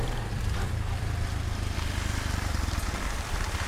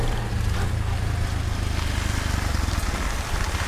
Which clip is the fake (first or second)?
first